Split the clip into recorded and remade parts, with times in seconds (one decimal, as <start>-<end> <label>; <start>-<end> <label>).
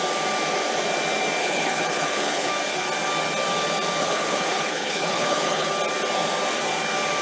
0.0-1.4 recorded; 1.4-2.5 remade; 2.5-4.0 recorded; 4.0-5.7 remade; 5.7-7.2 recorded